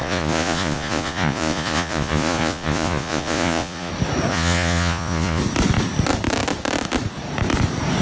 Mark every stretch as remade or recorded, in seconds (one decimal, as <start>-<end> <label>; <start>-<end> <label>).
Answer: 0.0-3.9 remade; 3.9-4.3 recorded; 4.3-5.4 remade; 5.4-8.0 recorded